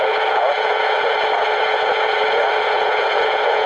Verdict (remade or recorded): remade